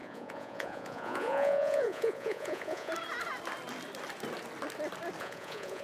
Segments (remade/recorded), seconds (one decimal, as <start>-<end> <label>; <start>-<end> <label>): 0.0-2.9 remade; 2.9-5.2 recorded; 5.2-5.8 remade